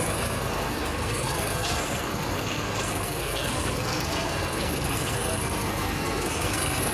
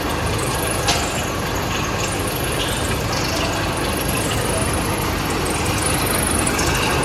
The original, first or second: second